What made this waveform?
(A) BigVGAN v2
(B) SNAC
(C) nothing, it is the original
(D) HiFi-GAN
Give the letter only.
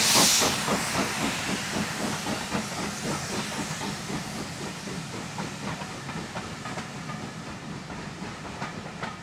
C